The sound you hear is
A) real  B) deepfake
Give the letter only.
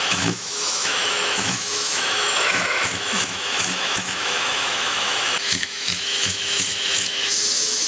B